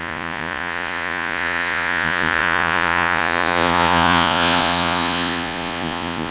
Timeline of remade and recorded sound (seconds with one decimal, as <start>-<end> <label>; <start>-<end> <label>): 0.0-6.3 remade

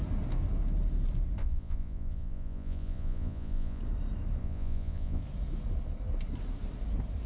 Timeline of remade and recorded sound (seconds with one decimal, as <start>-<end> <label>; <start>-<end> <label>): 0.0-1.4 recorded; 1.4-3.8 remade; 3.8-4.4 recorded; 4.4-5.2 remade; 5.2-7.3 recorded

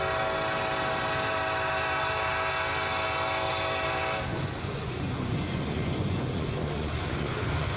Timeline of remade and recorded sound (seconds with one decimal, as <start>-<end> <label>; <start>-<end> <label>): 0.0-4.3 recorded; 4.3-7.8 remade

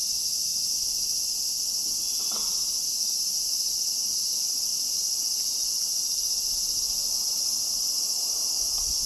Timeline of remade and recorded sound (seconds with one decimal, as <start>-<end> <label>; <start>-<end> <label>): 0.0-9.1 recorded

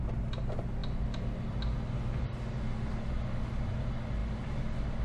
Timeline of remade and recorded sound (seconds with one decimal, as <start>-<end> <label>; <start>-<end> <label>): 0.0-5.0 recorded